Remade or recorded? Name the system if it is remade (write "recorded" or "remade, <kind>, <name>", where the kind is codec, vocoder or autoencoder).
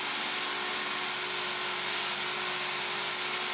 recorded